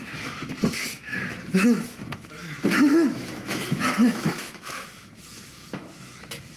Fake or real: fake